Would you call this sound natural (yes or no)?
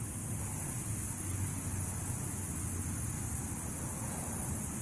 yes